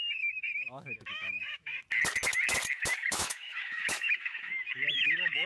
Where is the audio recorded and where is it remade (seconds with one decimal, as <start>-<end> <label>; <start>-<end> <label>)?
0.0-1.7 remade; 1.7-2.7 recorded; 2.7-5.5 remade